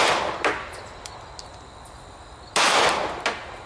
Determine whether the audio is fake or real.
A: real